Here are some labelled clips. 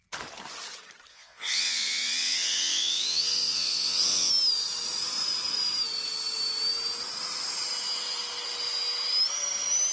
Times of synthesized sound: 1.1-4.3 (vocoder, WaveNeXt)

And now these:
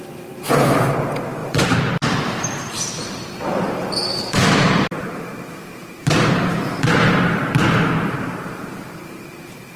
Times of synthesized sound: 0.0-9.8 (vocoder, BigVGAN v2)

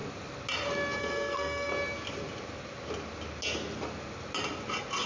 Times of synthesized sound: 1.0-1.7 (codec, SNAC)

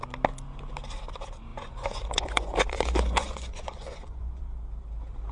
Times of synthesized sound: 1.5-4.4 (vocoder, Vocos)

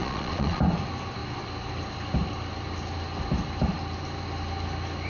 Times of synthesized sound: 0.0-0.6 (vocoder, Vocos)

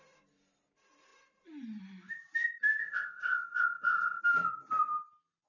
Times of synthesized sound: 2.8-4.2 (codec, ZipCodec)